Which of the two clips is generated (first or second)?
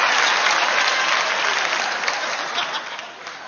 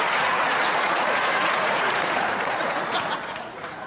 second